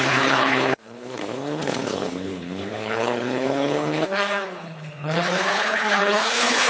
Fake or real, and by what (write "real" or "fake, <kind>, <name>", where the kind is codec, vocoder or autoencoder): fake, codec, HILCodec